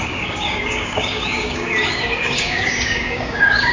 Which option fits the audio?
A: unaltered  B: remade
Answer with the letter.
B